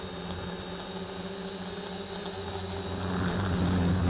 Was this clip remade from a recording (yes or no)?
no